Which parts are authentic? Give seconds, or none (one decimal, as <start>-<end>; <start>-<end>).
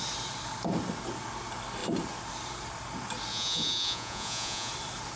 0.0-3.3; 4.7-5.2